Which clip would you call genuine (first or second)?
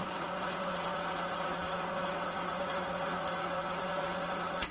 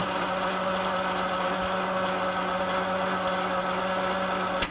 second